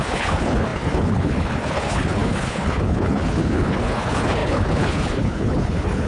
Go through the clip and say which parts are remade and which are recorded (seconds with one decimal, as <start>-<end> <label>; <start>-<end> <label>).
0.0-6.1 remade